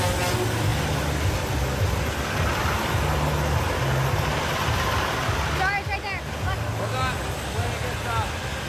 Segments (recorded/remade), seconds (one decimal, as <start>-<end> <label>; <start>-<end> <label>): 0.0-8.7 recorded